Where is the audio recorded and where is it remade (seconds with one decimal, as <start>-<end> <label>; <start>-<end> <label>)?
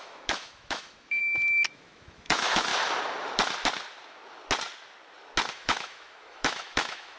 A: 0.0-1.2 remade; 1.2-1.7 recorded; 1.7-2.7 remade; 2.7-5.5 recorded; 5.5-7.2 remade